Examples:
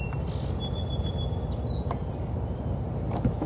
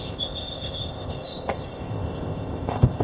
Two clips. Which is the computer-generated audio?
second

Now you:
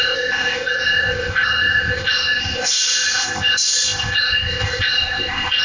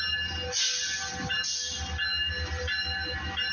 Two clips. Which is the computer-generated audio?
first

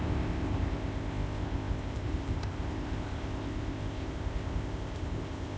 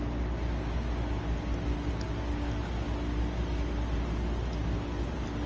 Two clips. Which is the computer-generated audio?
first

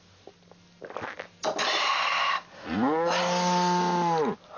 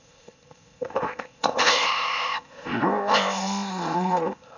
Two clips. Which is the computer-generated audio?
second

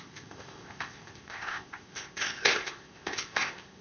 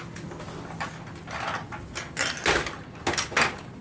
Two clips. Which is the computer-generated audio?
first